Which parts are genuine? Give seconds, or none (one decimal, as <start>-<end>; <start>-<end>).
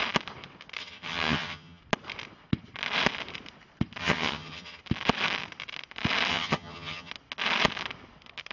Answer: 0.0-0.8; 1.8-4.0; 4.8-6.3; 7.1-8.5